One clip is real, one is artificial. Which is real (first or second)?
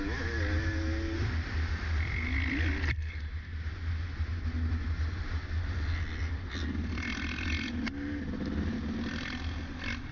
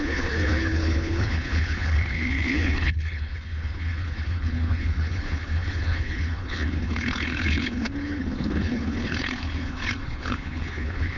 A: first